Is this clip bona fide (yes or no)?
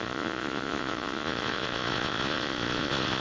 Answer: no